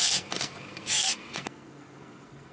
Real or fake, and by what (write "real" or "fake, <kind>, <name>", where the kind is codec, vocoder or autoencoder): fake, codec, SNAC